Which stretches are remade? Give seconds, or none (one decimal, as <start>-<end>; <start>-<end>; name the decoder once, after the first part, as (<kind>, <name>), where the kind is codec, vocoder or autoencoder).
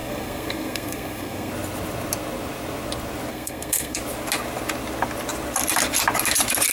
0.0-1.5 (codec, SNAC); 3.3-4.0